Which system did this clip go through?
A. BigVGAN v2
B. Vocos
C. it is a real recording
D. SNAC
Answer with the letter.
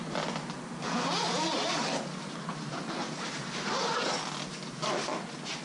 C